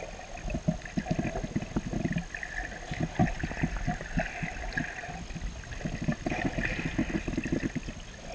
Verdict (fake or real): real